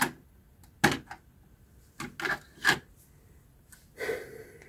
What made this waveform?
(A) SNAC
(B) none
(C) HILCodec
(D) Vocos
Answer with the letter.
B